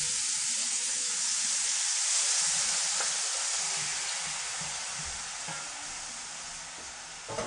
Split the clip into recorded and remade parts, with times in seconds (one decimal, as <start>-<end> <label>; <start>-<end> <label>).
0.0-0.6 recorded; 0.6-1.1 remade; 1.1-7.5 recorded